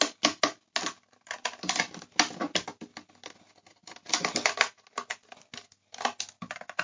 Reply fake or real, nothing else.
real